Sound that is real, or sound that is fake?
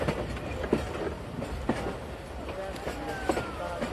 real